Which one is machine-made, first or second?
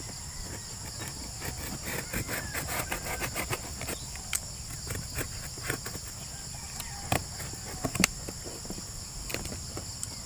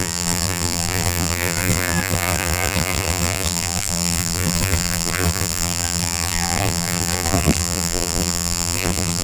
second